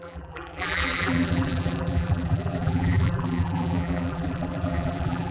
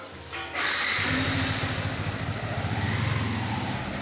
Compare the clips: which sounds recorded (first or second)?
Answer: second